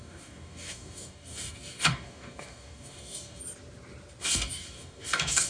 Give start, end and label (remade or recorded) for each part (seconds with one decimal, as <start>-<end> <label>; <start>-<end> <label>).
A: 0.0-3.4 remade; 3.4-4.2 recorded; 4.2-5.5 remade